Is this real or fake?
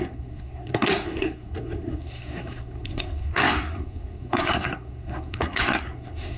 fake